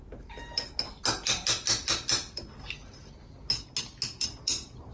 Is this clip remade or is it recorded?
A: recorded